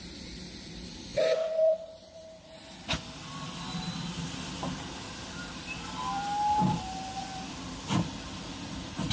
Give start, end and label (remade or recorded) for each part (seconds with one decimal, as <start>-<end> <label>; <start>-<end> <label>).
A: 0.0-9.1 remade